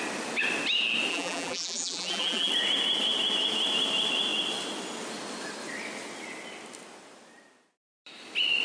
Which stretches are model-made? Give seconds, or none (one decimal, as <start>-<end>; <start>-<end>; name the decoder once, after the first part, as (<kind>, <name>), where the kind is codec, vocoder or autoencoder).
1.1-2.5 (vocoder, BigVGAN v2)